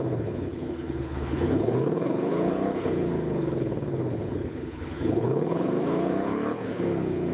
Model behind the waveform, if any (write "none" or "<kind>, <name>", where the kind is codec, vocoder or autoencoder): codec, HILCodec